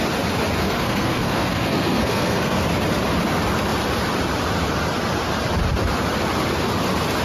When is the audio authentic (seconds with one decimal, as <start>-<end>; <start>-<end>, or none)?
0.0-0.6; 2.6-7.2